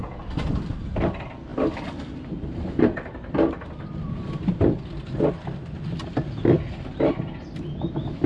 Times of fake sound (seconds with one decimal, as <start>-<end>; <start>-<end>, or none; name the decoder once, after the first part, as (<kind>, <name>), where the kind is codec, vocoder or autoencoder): none